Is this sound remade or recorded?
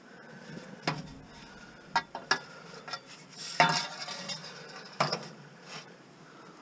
recorded